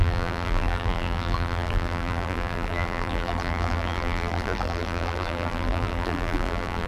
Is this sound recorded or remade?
remade